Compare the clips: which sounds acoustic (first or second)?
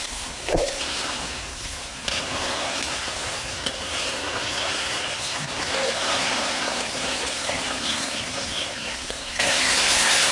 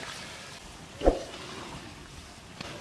second